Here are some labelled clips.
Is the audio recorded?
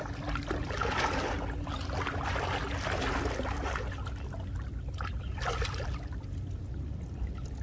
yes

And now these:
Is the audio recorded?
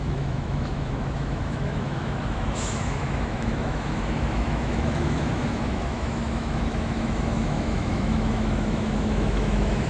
no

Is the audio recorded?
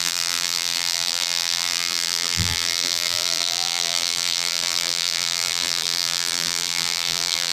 no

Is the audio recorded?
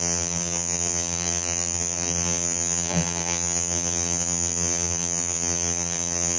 no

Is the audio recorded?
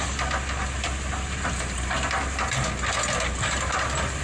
yes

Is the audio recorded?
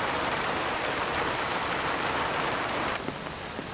no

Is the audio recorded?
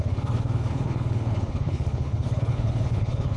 no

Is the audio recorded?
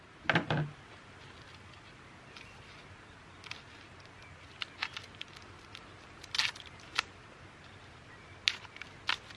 yes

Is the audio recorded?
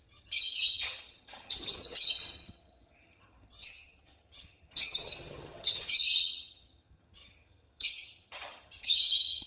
no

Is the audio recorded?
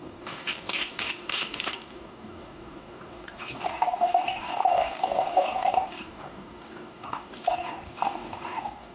no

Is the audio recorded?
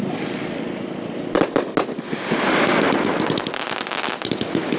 yes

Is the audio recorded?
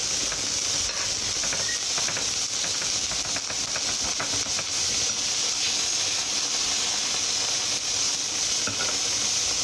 yes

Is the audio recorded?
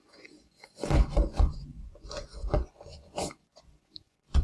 no